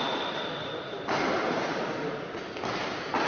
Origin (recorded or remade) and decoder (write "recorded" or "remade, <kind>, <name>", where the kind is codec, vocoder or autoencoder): recorded